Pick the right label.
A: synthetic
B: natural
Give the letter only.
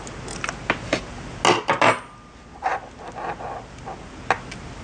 B